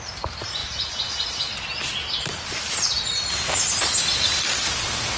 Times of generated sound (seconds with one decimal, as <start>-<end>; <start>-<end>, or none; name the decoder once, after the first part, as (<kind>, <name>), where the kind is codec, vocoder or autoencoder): none

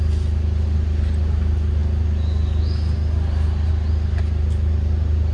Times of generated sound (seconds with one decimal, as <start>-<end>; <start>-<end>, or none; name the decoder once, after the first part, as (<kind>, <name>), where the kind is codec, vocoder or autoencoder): none

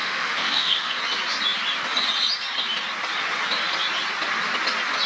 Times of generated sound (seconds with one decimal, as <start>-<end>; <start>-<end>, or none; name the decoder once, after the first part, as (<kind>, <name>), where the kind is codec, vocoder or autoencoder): 0.0-1.0 (autoencoder, DAC-VAE)